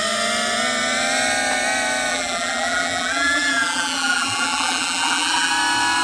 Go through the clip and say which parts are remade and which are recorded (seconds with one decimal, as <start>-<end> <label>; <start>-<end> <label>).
0.0-2.1 recorded; 2.1-5.5 remade; 5.5-6.0 recorded